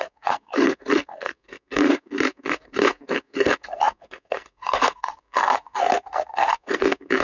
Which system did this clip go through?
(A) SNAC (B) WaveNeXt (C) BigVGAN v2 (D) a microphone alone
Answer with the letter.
A